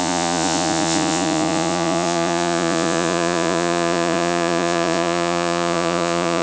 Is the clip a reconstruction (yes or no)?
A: yes